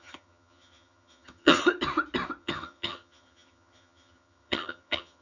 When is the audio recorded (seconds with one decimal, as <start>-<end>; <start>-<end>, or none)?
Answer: 1.6-2.4